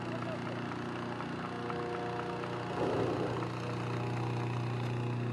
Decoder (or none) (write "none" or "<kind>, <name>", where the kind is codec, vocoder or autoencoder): none